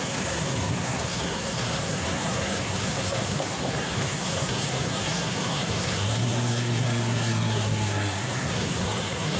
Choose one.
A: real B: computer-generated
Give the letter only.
B